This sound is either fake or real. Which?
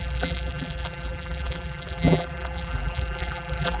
fake